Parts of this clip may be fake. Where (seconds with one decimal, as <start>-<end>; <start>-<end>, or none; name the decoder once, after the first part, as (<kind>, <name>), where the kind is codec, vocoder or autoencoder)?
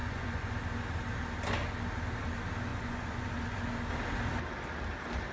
0.0-0.5 (vocoder, Vocos); 2.7-3.3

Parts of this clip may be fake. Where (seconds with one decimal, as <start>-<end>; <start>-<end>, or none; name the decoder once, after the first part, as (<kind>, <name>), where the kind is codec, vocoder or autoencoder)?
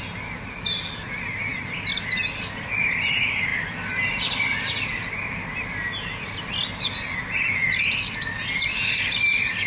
none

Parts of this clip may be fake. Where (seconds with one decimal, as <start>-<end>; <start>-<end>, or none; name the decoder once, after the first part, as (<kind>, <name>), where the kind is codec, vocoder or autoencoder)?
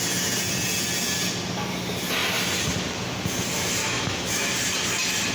3.8-4.5 (autoencoder, DAC-VAE)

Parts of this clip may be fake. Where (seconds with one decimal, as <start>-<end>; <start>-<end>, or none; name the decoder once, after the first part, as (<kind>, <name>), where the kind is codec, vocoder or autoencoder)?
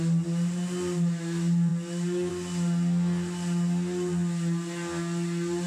none